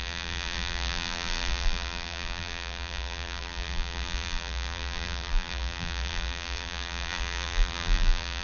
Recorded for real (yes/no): no